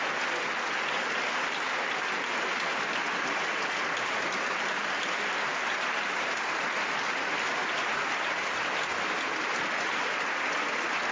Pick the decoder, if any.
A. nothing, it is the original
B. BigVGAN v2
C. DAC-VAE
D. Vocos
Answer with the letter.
A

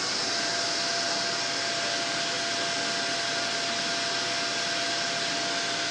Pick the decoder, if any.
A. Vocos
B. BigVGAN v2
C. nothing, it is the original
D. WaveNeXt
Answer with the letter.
C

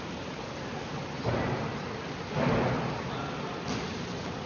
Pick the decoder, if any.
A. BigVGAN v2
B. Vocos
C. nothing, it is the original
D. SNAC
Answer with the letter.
C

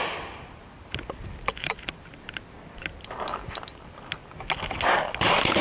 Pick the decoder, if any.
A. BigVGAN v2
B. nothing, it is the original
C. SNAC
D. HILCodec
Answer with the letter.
B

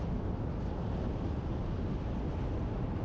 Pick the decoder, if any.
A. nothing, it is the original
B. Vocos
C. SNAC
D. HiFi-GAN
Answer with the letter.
A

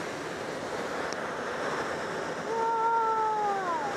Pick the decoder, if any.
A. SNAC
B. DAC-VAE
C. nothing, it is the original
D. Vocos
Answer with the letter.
C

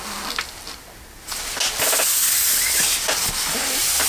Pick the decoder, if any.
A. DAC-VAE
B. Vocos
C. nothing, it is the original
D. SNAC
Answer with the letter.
C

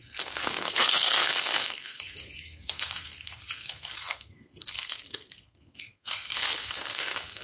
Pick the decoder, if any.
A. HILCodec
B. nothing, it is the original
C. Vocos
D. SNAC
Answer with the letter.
D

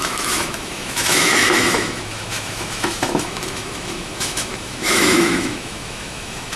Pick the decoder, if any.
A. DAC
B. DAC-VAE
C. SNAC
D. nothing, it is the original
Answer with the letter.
B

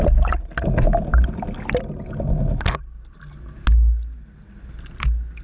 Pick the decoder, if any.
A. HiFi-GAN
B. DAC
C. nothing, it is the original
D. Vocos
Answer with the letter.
C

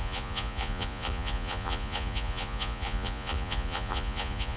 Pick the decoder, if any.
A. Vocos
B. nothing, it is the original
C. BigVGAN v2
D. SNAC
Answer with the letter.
A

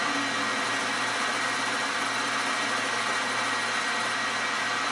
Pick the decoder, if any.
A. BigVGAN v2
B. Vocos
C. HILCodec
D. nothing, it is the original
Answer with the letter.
D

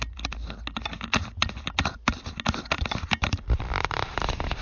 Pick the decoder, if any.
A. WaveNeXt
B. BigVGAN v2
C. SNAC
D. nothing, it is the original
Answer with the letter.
D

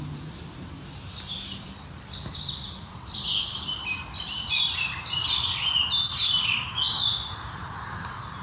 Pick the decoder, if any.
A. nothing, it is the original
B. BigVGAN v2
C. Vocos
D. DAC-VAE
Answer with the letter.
B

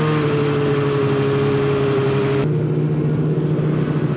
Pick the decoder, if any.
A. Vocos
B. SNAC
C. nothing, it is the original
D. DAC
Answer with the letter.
C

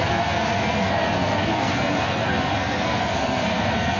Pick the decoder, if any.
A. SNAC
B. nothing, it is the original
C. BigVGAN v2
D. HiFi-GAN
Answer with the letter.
A